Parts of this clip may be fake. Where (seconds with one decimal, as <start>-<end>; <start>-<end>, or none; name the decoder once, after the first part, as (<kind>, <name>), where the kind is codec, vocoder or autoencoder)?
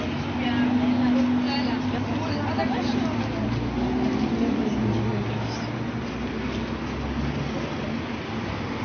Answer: none